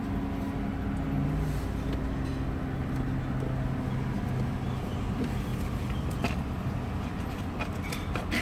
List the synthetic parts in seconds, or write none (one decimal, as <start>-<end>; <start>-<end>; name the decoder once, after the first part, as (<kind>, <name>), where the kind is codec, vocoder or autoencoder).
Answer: 5.5-7.4 (vocoder, BigVGAN v2)

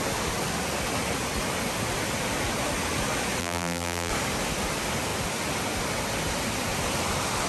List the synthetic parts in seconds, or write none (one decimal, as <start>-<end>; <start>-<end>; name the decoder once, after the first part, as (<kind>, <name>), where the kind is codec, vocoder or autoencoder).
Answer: 3.4-4.1 (vocoder, BigVGAN v2)

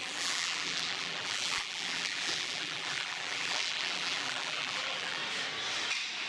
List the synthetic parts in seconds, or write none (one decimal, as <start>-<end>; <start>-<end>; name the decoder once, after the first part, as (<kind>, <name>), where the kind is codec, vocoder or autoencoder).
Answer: 0.0-5.2 (vocoder, BigVGAN v2)

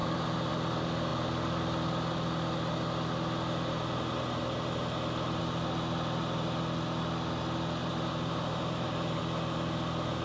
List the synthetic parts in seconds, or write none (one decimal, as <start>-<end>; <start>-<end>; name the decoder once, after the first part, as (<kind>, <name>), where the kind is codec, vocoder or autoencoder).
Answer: 0.0-0.5 (vocoder, BigVGAN v2); 7.8-9.2

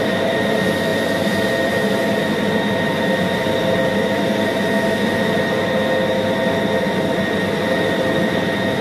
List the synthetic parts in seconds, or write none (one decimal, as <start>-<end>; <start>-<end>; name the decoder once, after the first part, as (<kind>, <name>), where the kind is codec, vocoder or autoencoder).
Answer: none

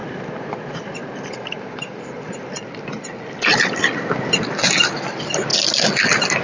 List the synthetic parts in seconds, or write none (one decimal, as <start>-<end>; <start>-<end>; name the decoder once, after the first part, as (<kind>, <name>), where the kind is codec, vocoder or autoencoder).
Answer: 0.0-3.8 (vocoder, BigVGAN v2)

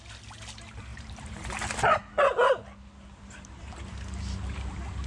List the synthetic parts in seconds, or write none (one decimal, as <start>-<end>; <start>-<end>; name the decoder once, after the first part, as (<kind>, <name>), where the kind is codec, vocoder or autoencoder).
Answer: 0.9-1.5 (vocoder, BigVGAN v2)